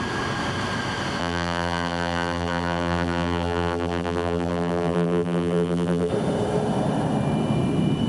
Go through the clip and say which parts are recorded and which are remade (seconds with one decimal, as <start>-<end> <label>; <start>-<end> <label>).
0.0-1.2 recorded; 1.2-6.1 remade; 6.1-8.1 recorded